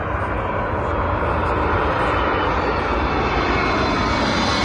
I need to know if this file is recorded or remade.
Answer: recorded